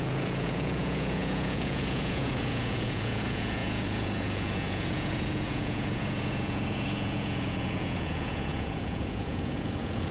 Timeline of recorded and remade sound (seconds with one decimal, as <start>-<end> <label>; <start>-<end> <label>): 0.0-10.1 remade